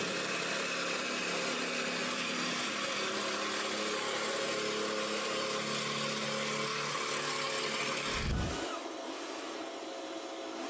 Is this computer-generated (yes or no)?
no